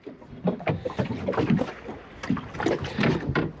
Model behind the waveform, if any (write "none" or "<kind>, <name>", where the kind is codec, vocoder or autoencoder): none